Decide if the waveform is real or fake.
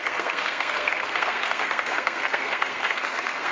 fake